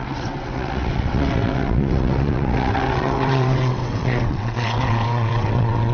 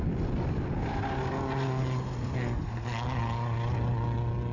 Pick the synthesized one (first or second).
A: first